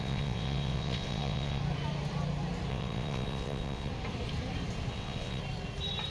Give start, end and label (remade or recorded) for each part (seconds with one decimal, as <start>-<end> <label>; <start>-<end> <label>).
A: 0.0-1.6 remade; 1.6-2.7 recorded; 2.7-3.9 remade; 3.9-4.9 recorded; 4.9-5.4 remade; 5.4-6.1 recorded